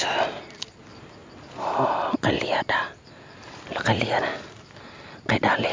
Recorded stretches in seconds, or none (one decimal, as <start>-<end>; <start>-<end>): 0.0-5.7